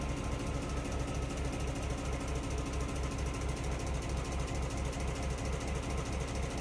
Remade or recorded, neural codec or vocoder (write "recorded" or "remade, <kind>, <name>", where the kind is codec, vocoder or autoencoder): recorded